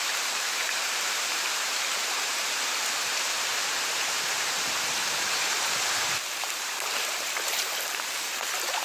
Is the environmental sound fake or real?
fake